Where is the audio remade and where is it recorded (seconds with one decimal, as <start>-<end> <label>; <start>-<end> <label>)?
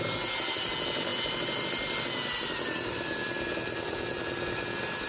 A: 0.0-5.1 recorded